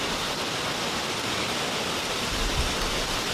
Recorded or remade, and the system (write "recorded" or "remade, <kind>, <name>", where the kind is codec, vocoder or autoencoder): recorded